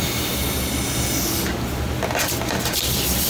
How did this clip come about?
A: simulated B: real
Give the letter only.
B